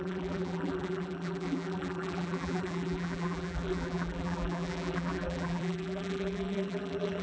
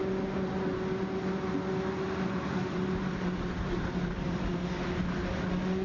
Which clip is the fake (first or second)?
first